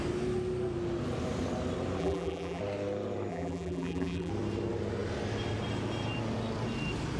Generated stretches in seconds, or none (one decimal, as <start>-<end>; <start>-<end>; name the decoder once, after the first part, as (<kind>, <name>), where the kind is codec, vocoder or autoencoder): 2.0-2.6 (vocoder, BigVGAN v2); 3.3-4.3